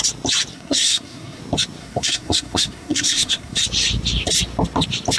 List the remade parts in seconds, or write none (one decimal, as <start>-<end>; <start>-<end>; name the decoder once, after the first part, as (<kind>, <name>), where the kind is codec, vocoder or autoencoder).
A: 0.5-1.4 (codec, SNAC); 1.8-3.6